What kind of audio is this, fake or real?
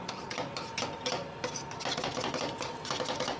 real